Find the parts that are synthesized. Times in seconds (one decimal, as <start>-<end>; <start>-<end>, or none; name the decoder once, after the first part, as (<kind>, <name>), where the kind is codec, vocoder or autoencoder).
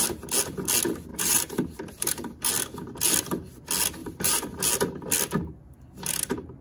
1.1-2.5 (vocoder, BigVGAN v2); 4.0-4.6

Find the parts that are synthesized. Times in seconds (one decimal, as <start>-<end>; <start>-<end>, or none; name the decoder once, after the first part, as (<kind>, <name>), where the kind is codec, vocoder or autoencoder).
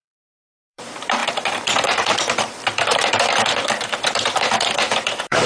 0.0-5.5 (vocoder, BigVGAN v2)